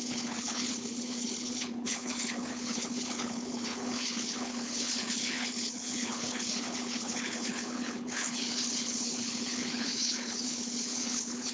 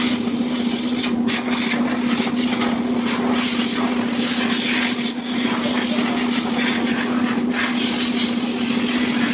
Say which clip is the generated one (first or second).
first